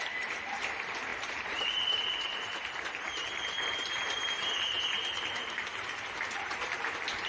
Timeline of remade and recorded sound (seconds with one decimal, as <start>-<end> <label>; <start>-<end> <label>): 0.0-7.3 remade